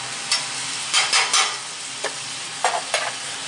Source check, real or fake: real